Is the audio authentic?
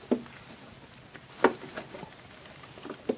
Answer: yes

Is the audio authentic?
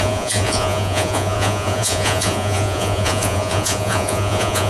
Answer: no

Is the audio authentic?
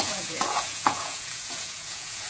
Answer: no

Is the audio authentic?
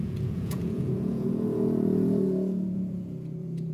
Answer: no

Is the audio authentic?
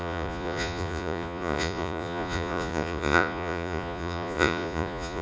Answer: no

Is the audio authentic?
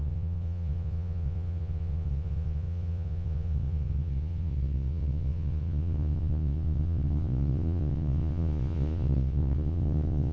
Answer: no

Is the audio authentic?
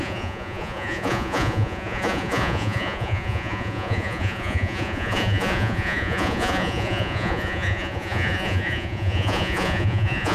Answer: no